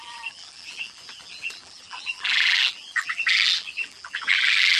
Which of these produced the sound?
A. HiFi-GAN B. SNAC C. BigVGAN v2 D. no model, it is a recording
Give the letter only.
C